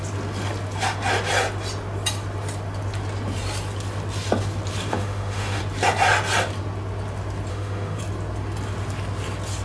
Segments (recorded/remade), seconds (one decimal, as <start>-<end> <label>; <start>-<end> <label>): 0.0-4.9 recorded; 4.9-5.6 remade; 5.6-7.5 recorded; 7.5-8.0 remade; 8.0-9.6 recorded